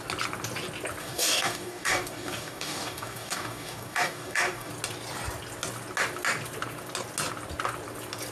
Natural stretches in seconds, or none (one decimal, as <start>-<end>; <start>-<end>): 0.0-1.0; 4.7-8.3

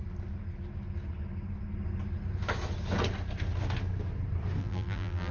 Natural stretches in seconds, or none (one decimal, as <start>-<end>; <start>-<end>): 0.0-4.6

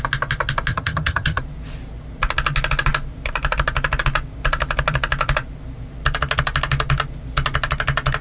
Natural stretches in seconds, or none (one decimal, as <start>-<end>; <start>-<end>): 0.0-0.7; 1.4-8.2